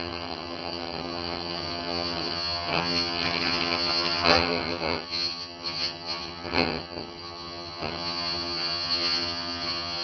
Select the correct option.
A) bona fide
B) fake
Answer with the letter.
B